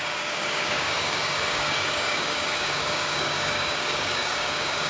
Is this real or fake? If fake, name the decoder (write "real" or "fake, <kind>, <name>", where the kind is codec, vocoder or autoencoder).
fake, codec, DAC